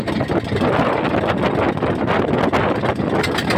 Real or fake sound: real